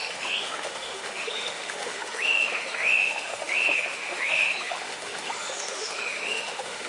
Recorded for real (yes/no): no